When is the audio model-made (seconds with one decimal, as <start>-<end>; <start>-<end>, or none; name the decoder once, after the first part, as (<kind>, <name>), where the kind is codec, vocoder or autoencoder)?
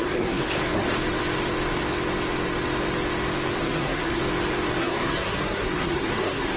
0.0-0.4 (codec, SNAC); 3.6-4.2; 4.8-6.6